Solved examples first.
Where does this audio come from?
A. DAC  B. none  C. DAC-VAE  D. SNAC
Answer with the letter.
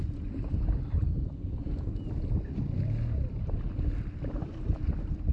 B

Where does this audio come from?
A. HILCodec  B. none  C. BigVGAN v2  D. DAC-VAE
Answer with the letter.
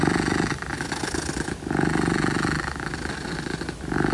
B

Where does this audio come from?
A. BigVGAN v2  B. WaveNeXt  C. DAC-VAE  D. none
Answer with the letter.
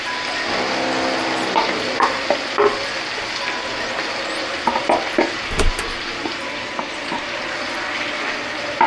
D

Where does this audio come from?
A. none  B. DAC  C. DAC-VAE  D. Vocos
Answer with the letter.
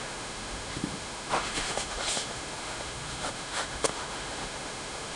C